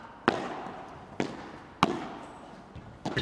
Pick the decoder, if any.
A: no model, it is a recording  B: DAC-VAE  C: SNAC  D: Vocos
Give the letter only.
A